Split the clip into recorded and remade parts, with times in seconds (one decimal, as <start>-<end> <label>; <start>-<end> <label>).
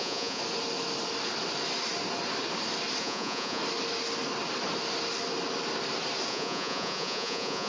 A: 0.0-0.4 remade; 0.4-3.0 recorded; 3.0-3.6 remade; 3.6-6.3 recorded; 6.3-7.7 remade